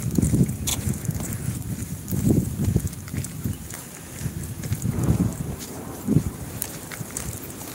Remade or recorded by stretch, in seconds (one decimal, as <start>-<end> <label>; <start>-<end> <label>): 0.0-0.7 recorded; 0.7-1.7 remade; 1.7-3.1 recorded; 3.1-3.7 remade; 3.7-5.3 recorded; 5.3-7.3 remade; 7.3-7.7 recorded